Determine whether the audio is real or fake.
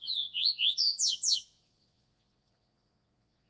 fake